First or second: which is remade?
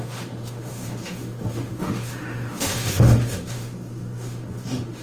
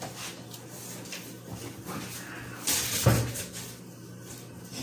first